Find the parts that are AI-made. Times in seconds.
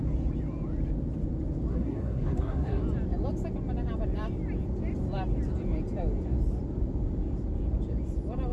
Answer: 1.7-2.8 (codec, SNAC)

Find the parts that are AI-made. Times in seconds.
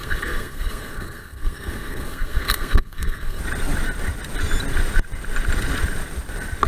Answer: 0.0-3.4 (codec, SNAC)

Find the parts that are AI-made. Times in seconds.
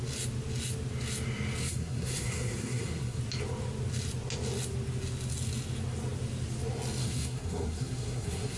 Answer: 1.6-3.2 (codec, SNAC); 7.0-8.6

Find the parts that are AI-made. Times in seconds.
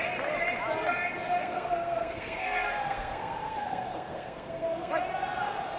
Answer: 1.4-4.9 (codec, SNAC)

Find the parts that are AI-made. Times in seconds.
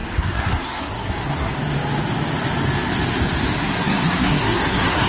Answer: 0.0-1.5 (codec, SNAC); 3.6-5.1